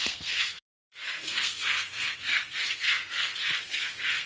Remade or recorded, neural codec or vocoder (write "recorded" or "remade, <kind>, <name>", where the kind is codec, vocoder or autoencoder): remade, codec, SNAC